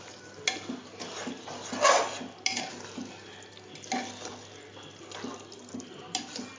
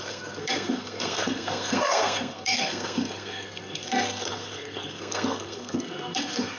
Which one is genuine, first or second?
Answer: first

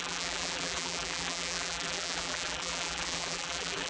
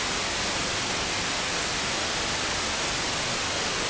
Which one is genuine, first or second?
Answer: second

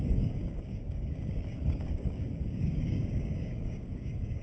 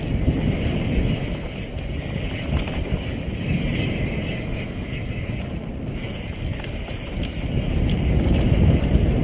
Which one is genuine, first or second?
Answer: second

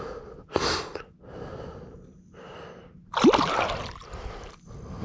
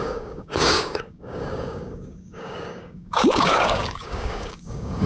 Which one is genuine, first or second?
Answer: first